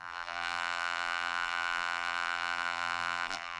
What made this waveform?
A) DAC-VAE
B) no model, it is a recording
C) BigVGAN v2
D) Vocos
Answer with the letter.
C